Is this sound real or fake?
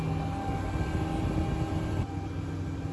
real